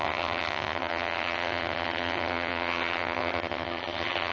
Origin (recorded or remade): remade